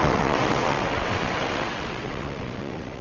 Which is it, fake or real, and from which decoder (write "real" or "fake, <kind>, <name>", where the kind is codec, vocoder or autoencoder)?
fake, vocoder, WaveNeXt